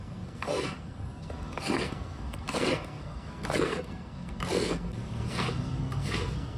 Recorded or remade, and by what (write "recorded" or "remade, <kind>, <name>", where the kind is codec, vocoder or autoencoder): remade, codec, SNAC